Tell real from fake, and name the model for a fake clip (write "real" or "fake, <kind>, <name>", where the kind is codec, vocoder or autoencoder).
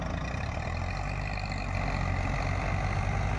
real